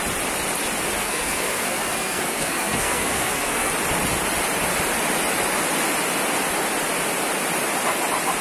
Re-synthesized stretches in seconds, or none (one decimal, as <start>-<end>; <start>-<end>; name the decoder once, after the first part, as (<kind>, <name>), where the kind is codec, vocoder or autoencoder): 1.0-3.7 (codec, SNAC)